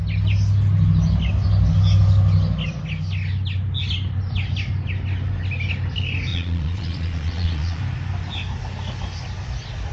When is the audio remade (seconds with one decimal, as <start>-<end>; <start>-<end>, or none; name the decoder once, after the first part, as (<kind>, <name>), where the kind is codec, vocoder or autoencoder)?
6.3-7.8 (vocoder, Vocos)